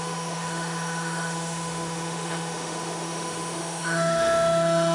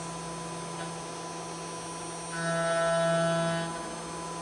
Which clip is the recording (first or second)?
second